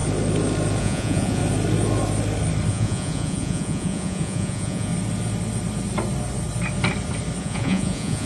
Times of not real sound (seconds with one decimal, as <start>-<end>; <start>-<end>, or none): 0.8-1.4; 2.7-4.9; 7.4-8.3